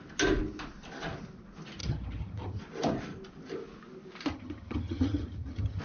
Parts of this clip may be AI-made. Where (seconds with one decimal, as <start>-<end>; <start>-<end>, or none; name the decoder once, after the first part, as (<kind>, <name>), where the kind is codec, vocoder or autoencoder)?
1.8-2.6 (vocoder, HiFi-GAN); 4.3-5.8